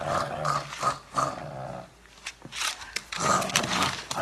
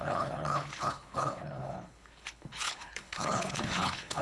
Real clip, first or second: first